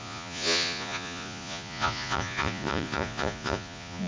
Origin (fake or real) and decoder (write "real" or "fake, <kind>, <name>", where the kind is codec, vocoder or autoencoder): fake, vocoder, Vocos